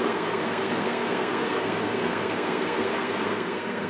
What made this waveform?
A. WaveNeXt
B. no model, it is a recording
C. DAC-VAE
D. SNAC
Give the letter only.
D